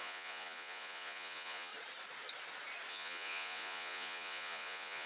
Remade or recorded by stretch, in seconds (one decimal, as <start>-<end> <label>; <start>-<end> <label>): 0.0-1.7 remade; 1.7-2.9 recorded; 2.9-5.1 remade